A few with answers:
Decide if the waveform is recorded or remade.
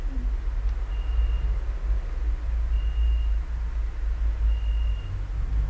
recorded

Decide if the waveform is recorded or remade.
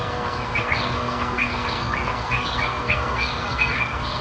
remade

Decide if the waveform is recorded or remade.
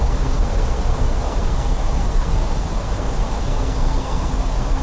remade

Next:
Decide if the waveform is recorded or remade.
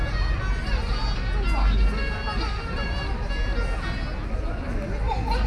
recorded